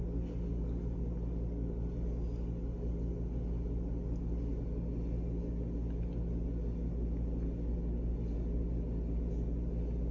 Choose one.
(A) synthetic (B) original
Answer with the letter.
B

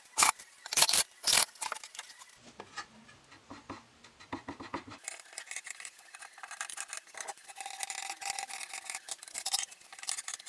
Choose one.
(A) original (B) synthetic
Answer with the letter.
A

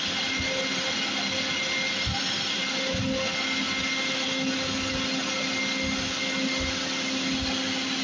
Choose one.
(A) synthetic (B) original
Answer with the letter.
B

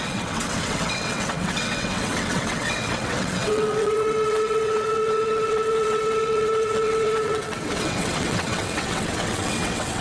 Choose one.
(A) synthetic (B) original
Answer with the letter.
A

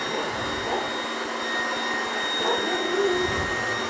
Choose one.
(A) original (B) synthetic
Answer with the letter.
A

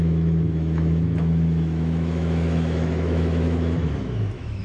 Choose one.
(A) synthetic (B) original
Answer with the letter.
A